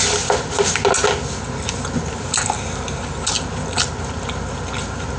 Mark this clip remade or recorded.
recorded